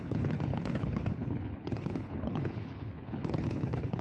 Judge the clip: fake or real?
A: fake